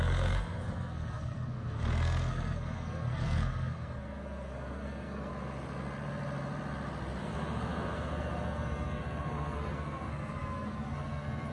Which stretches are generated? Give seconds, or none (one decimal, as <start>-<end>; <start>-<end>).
0.0-5.3; 7.2-11.5